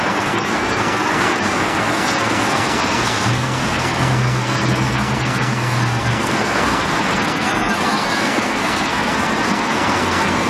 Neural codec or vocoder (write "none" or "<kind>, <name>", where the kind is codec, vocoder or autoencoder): codec, SNAC